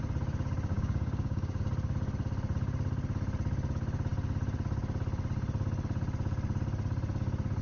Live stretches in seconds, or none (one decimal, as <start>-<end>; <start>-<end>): 0.0-0.7; 1.6-7.6